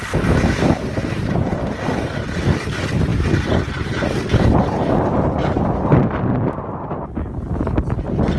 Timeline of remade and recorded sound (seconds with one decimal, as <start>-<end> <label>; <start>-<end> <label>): 0.0-8.4 recorded